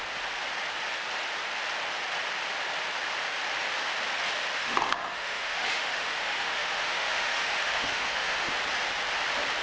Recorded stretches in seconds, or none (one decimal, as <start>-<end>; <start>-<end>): 0.0-4.6; 8.5-9.6